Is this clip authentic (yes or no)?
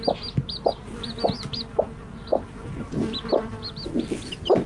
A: yes